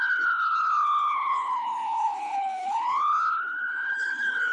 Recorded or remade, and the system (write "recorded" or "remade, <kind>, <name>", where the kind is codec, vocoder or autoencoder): remade, codec, HILCodec